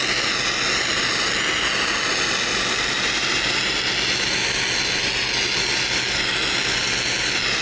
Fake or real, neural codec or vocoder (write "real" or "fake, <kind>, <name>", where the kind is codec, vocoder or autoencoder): real